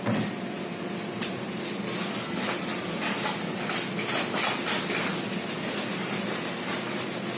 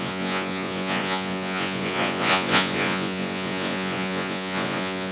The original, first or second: first